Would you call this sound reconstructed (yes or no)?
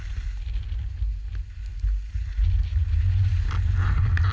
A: no